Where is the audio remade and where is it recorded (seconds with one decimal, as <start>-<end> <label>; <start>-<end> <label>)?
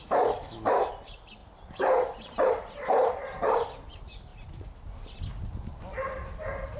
0.0-0.9 remade; 0.9-6.8 recorded